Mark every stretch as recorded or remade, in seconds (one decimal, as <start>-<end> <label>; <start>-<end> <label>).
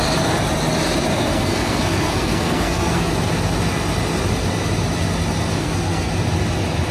0.0-1.1 recorded; 1.1-3.1 remade; 3.1-5.6 recorded; 5.6-6.1 remade; 6.1-6.9 recorded